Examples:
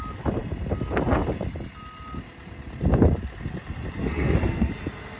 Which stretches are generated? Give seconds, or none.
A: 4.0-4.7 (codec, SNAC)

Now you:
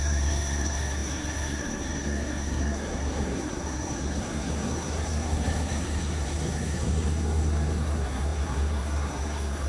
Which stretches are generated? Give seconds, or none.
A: 0.0-9.7 (codec, SNAC)